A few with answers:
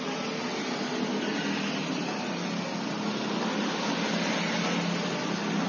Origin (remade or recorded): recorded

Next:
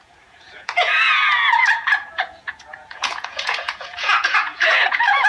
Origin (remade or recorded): remade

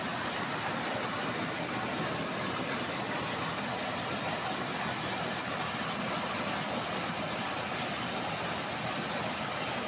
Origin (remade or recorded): recorded